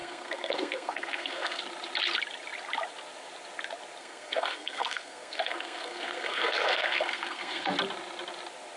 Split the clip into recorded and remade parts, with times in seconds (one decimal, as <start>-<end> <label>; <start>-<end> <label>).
0.0-1.6 remade; 1.6-4.0 recorded; 4.0-7.7 remade; 7.7-8.8 recorded